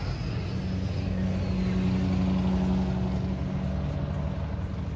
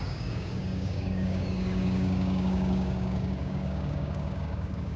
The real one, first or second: first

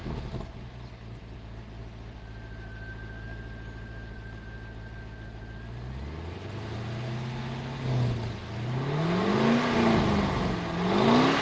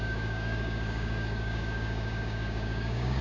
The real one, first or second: first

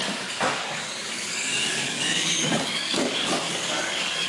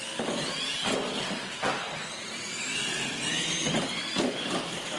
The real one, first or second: second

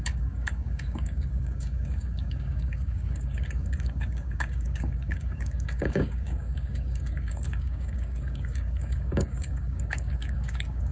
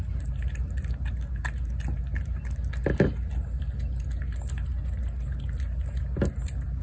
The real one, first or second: second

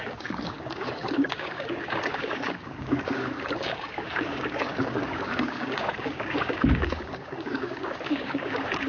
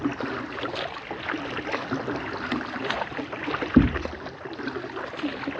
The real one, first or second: second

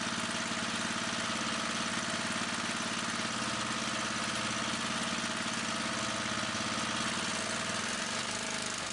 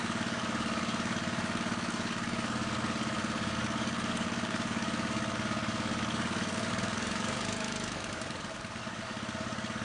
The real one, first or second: first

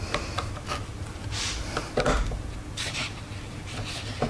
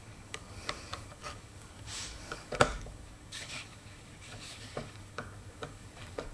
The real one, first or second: first